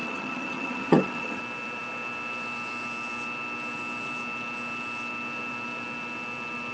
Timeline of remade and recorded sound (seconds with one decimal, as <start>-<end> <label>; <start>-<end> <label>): 0.0-1.4 remade; 1.4-6.7 recorded